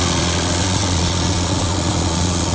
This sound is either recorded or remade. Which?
remade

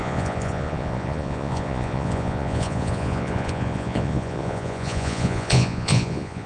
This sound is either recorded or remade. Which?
remade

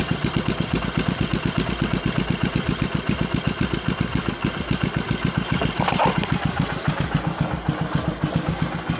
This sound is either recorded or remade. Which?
recorded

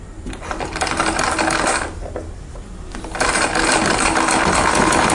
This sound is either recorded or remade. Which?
recorded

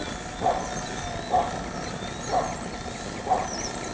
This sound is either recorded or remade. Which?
recorded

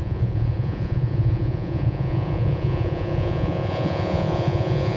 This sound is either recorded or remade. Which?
remade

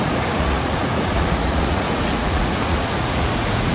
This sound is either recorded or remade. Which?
remade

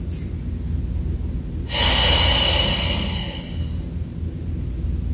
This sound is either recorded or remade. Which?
recorded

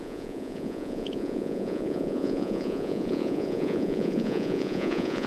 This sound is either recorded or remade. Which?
remade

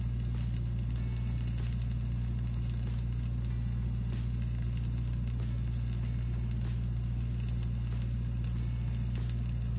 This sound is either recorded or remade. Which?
recorded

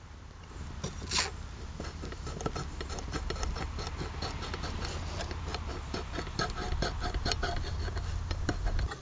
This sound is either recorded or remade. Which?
recorded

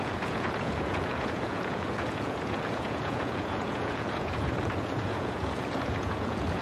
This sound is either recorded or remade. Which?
remade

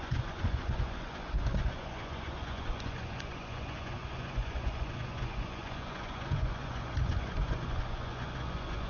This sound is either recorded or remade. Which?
remade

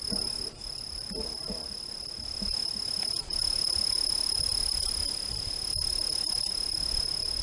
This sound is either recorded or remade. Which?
recorded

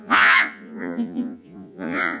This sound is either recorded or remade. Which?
remade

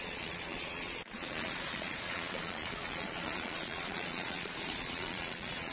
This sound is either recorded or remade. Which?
remade